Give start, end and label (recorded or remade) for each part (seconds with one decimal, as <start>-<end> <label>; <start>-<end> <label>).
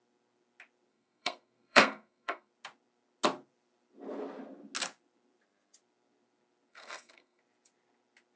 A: 0.0-0.9 recorded; 0.9-2.5 remade; 2.5-6.7 recorded; 6.7-7.4 remade; 7.4-8.4 recorded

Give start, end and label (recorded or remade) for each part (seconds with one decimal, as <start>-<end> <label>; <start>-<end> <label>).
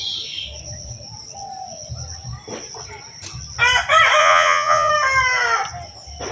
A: 0.0-4.2 recorded; 4.2-4.9 remade; 4.9-6.3 recorded